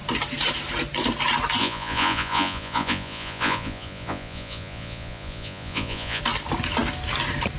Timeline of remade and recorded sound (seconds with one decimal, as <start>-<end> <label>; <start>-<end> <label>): 0.0-1.6 recorded; 1.6-6.2 remade; 6.2-7.6 recorded